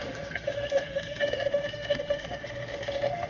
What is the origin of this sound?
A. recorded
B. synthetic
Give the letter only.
B